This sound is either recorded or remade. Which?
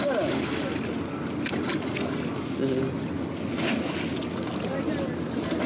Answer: recorded